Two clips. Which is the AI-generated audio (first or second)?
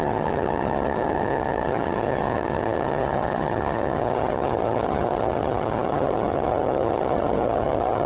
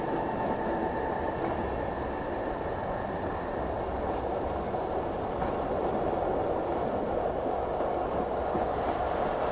first